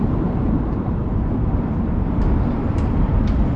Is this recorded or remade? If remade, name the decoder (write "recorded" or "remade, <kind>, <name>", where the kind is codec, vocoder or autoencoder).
remade, vocoder, BigVGAN v2